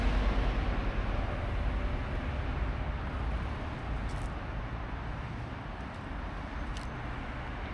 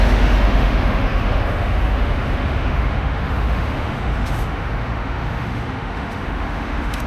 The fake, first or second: second